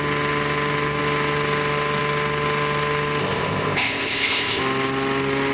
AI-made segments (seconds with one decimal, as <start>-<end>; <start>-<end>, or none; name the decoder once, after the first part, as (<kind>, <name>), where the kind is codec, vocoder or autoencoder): 3.2-4.6 (codec, ZipCodec)